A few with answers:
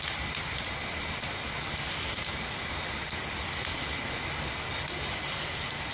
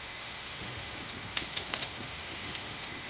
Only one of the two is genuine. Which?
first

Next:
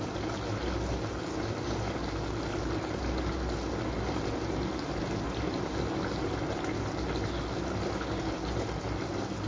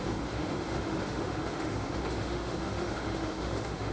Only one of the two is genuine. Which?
first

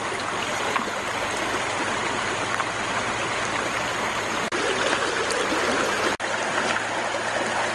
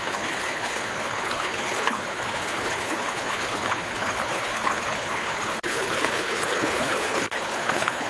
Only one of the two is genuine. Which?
first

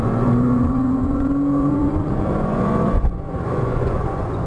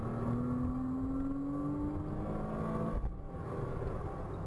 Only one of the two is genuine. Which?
second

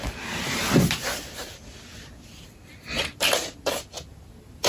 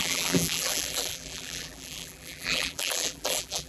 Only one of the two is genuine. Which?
first